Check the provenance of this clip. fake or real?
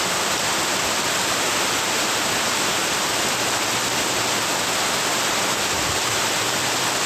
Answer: real